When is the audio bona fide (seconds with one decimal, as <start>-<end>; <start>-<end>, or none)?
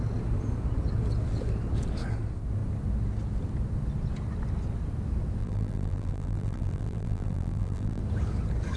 0.0-5.4; 8.0-8.8